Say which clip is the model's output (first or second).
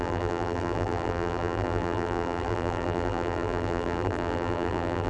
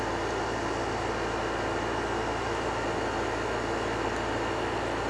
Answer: first